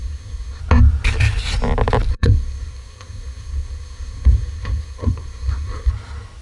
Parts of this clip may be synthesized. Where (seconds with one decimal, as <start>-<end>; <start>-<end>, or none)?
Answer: 0.0-0.6; 2.1-5.9